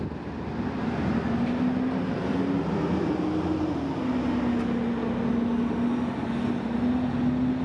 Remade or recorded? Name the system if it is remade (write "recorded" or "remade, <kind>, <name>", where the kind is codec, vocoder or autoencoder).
recorded